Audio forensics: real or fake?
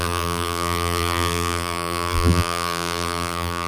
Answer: fake